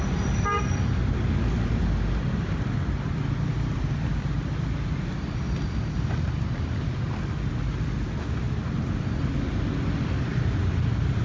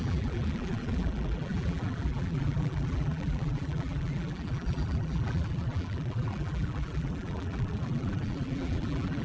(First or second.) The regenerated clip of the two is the second